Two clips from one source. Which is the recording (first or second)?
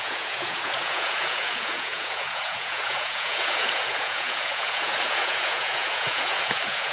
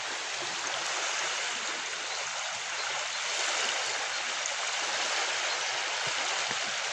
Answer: second